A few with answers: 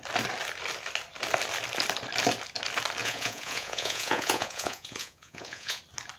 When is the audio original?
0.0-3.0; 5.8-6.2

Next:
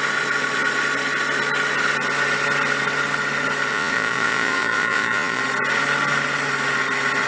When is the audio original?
0.0-3.7; 5.4-7.3

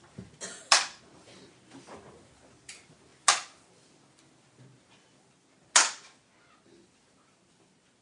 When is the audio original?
0.0-8.0